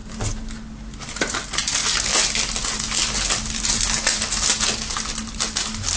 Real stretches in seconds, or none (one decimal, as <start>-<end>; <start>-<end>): 0.0-6.0